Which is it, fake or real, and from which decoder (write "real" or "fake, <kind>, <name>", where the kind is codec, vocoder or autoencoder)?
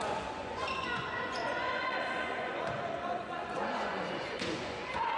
fake, vocoder, Vocos